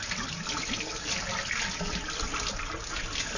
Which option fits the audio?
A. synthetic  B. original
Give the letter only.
B